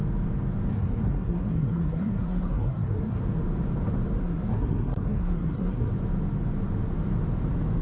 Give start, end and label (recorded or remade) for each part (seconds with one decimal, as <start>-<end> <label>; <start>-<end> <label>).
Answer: 0.0-0.7 recorded; 0.7-3.2 remade; 3.2-4.2 recorded; 4.2-5.9 remade; 5.9-7.8 recorded